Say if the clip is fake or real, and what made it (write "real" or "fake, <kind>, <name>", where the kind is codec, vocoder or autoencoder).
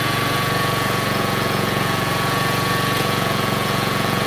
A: fake, vocoder, Vocos